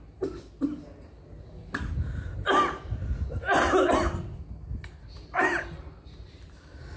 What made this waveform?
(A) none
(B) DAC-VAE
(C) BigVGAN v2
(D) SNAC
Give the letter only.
A